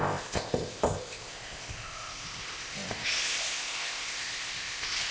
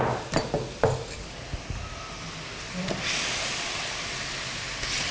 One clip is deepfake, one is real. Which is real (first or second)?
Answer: second